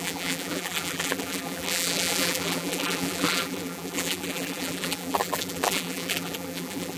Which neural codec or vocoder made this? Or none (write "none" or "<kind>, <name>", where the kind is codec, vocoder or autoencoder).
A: vocoder, BigVGAN v2